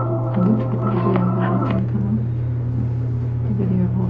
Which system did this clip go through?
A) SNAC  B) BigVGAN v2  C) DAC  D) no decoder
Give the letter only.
D